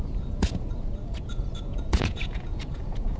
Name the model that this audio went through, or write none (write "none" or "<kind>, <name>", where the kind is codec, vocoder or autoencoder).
vocoder, Vocos